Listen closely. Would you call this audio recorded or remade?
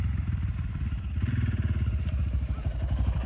remade